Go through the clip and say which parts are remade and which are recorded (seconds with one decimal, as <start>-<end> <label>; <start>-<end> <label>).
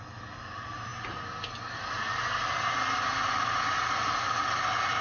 0.0-5.0 recorded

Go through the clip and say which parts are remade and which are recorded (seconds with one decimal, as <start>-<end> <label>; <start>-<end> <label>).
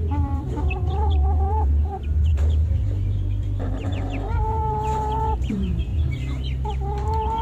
0.0-7.4 remade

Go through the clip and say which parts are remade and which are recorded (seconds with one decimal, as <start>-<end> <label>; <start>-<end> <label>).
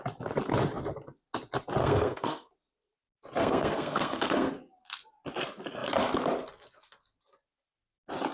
0.0-1.8 recorded; 1.8-2.5 remade; 2.5-3.4 recorded; 3.4-4.5 remade; 4.5-8.3 recorded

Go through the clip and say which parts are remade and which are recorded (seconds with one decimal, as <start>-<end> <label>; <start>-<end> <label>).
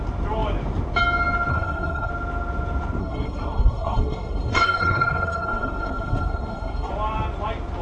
0.0-1.5 recorded; 1.5-2.1 remade; 2.1-3.0 recorded; 3.0-6.9 remade; 6.9-7.8 recorded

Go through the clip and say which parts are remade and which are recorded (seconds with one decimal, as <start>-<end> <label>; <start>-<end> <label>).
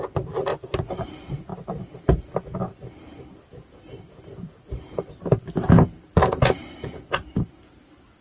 0.0-0.5 recorded; 0.5-1.1 remade; 1.1-8.2 recorded